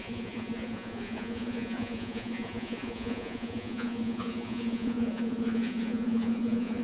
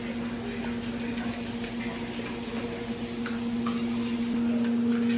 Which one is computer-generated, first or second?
first